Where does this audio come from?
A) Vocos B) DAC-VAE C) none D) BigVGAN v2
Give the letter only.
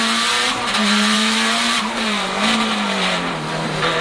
D